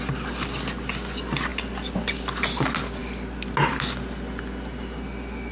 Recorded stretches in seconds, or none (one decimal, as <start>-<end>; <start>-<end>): 0.0-5.5